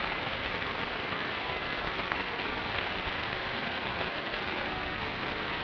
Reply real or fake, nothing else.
fake